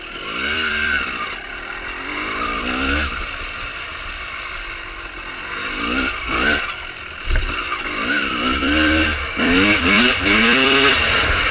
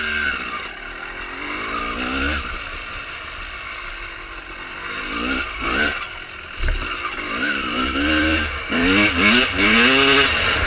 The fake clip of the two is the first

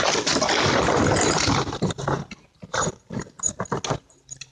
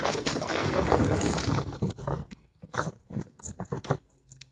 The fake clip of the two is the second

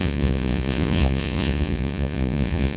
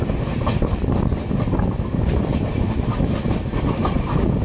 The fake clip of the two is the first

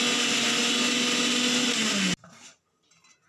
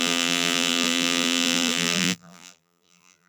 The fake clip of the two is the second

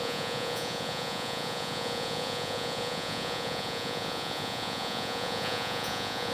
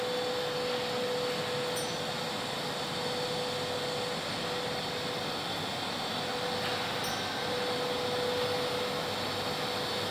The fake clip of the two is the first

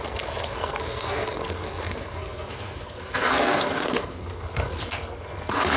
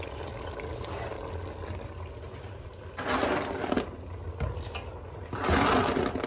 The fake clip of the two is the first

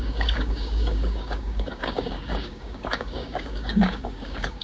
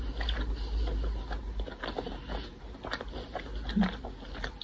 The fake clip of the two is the first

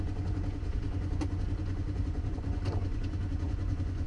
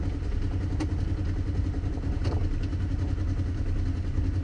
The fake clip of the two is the first